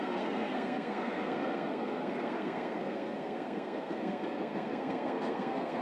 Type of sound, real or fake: fake